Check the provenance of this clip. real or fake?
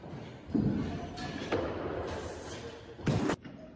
real